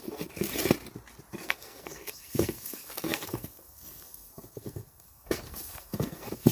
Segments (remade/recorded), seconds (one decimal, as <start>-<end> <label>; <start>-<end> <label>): 0.0-0.5 remade; 0.5-1.3 recorded; 1.3-6.5 remade